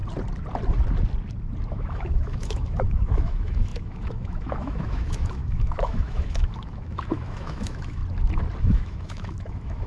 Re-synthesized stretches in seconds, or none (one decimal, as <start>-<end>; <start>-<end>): 1.7-8.0; 8.6-9.9